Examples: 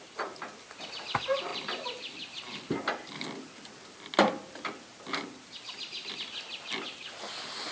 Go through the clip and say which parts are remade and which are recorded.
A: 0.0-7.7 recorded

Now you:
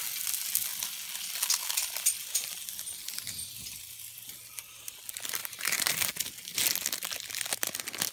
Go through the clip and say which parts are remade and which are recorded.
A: 0.0-5.4 recorded; 5.4-6.1 remade; 6.1-8.1 recorded

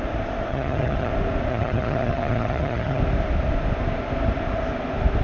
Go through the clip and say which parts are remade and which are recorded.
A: 0.0-0.5 recorded; 0.5-1.1 remade; 1.1-1.5 recorded; 1.5-3.0 remade; 3.0-5.2 recorded

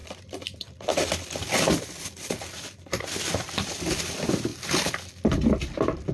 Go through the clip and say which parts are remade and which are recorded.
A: 0.0-3.1 remade; 3.1-6.1 recorded